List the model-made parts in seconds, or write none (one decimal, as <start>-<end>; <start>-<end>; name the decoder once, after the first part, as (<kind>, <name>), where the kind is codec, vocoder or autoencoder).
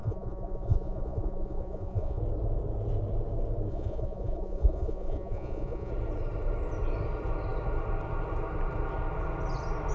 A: 0.0-2.2 (vocoder, Vocos); 3.7-5.9